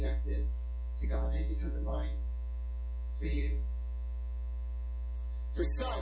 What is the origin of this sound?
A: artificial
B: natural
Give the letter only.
B